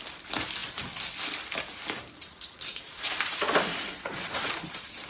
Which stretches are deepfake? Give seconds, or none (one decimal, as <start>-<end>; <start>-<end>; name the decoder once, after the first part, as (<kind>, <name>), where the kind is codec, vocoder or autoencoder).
2.2-4.5 (vocoder, Vocos)